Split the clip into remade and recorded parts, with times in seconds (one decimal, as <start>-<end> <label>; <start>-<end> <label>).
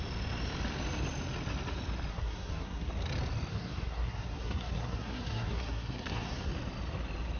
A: 0.0-2.1 recorded; 2.1-2.9 remade; 2.9-3.5 recorded; 3.5-6.5 remade; 6.5-7.4 recorded